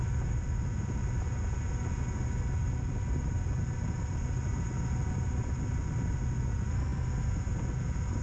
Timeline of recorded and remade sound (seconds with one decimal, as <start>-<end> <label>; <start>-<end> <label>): 0.0-8.2 recorded